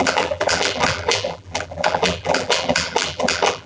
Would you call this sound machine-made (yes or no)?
yes